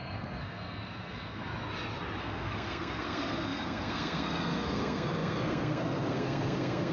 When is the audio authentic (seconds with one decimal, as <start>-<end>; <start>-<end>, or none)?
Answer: 1.5-2.2